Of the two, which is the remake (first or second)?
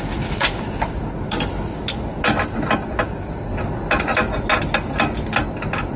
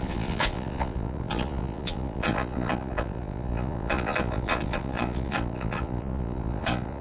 second